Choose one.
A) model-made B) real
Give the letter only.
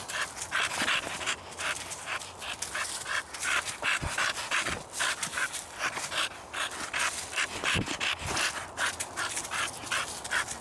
B